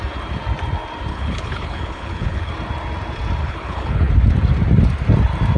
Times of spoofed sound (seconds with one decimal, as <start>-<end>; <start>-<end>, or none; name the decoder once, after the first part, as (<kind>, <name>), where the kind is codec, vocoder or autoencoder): 1.1-2.5 (codec, HILCodec); 3.4-4.1